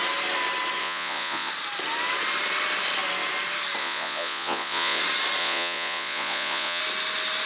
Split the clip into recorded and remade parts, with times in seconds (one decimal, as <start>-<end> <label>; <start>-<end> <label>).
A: 0.0-0.8 recorded; 0.8-1.5 remade; 1.5-3.8 recorded; 3.8-5.0 remade; 5.0-5.4 recorded; 5.4-6.8 remade; 6.8-7.5 recorded